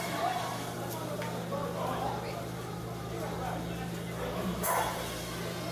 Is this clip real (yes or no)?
yes